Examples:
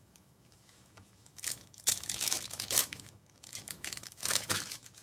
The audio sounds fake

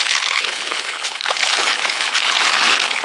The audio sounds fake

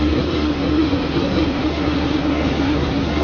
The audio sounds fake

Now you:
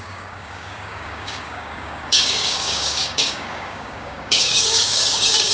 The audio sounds fake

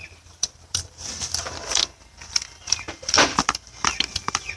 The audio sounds fake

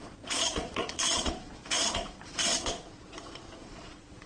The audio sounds fake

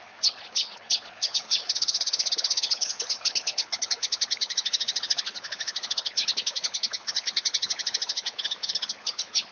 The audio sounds fake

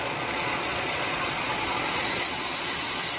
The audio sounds fake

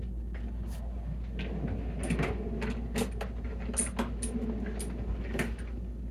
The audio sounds real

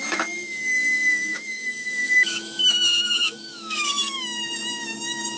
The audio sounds fake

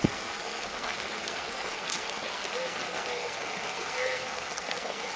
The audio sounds fake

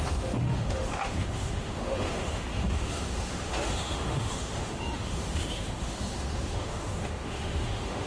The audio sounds fake